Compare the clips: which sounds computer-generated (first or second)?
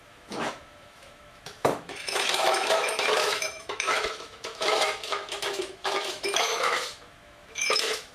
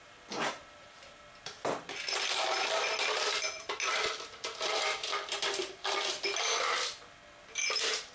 first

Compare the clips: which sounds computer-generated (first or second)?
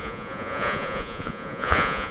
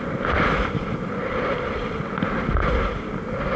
first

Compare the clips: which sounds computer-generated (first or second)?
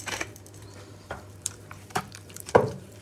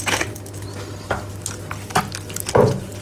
first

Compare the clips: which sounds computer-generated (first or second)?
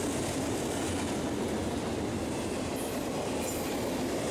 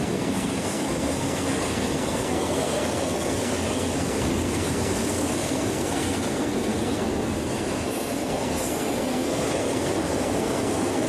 second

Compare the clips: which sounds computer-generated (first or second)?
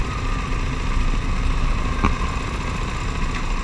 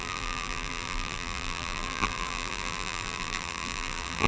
second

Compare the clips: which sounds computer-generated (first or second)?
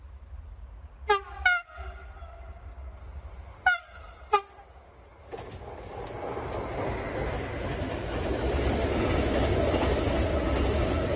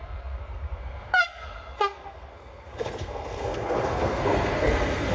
second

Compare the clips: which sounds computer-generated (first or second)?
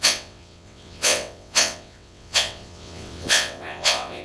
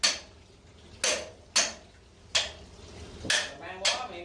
first